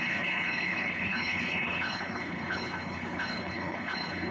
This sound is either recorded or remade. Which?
remade